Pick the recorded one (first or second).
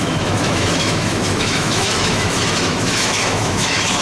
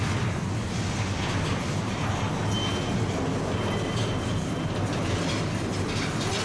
second